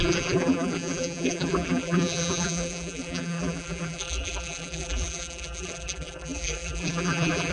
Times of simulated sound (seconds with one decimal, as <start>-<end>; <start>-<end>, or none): 0.0-7.5